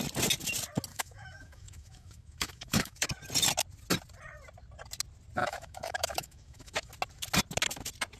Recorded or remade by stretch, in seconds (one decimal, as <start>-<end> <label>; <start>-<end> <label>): 0.0-0.9 recorded; 0.9-3.1 remade; 3.1-5.4 recorded; 5.4-6.9 remade; 6.9-8.2 recorded